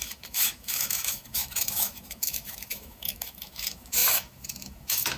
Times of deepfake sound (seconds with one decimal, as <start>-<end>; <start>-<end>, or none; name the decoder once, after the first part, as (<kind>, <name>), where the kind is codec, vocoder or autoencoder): 0.0-5.2 (autoencoder, DAC-VAE)